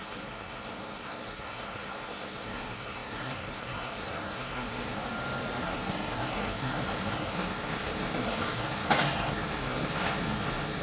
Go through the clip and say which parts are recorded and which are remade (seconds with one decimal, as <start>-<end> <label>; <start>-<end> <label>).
0.0-5.0 remade; 5.0-5.6 recorded; 5.6-10.8 remade